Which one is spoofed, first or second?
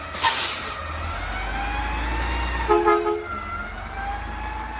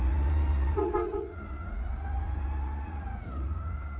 second